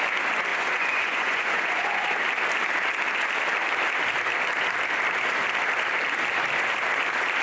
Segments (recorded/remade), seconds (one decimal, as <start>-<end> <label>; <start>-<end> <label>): 0.0-0.5 recorded; 0.5-2.1 remade; 2.1-7.4 recorded